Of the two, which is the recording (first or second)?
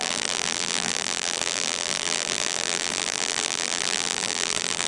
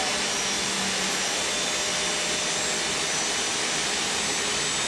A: second